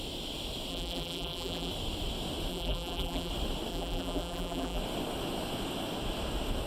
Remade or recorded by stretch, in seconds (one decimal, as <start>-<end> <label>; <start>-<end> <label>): 0.0-0.7 recorded; 0.7-1.7 remade; 1.7-2.5 recorded; 2.5-3.3 remade; 3.3-3.7 recorded; 3.7-4.8 remade; 4.8-6.7 recorded